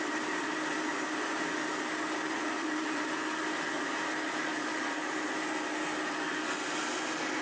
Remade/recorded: recorded